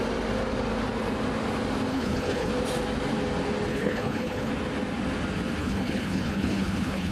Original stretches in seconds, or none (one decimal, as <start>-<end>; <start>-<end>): 0.0-1.9; 2.5-3.7; 4.5-5.6